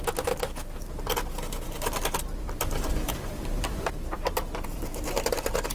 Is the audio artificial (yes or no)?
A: yes